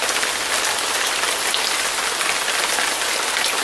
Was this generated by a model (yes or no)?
no